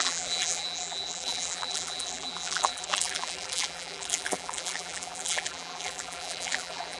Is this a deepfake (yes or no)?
yes